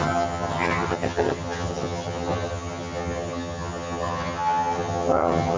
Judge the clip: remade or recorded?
remade